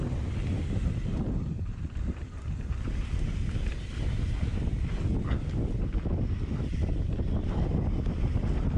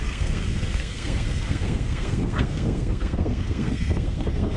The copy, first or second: second